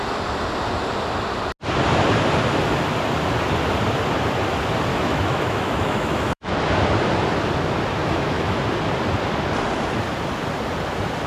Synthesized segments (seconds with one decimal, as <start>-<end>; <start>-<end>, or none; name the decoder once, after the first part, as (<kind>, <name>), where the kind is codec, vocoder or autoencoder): 4.9-6.5 (autoencoder, DAC-VAE); 8.0-8.6